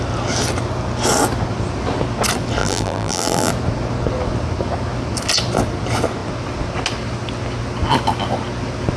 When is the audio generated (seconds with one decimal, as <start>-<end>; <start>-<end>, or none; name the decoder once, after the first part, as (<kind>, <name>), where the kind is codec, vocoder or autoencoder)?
2.6-3.5 (vocoder, BigVGAN v2)